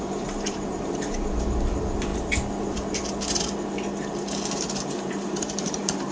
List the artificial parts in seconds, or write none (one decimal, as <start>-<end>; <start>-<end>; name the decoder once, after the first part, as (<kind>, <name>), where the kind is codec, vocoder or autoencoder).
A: 0.0-2.1 (vocoder, BigVGAN v2); 4.5-6.1